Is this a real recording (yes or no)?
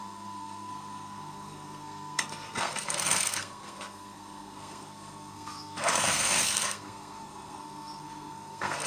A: no